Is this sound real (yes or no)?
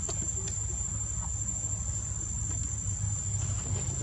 yes